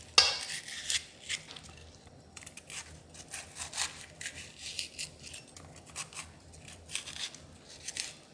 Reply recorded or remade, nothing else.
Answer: recorded